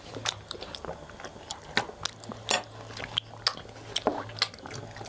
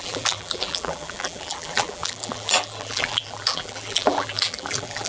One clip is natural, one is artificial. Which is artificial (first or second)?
second